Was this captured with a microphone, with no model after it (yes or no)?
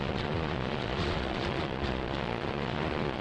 no